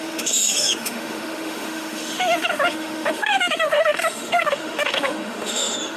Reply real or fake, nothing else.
fake